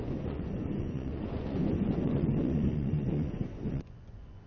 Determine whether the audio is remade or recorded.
remade